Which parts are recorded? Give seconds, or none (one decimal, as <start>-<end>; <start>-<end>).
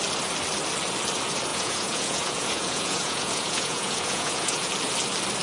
0.0-1.5; 4.7-5.4